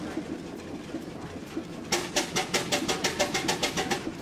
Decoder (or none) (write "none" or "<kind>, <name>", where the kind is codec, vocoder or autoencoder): none